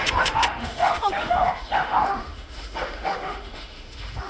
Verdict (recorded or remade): remade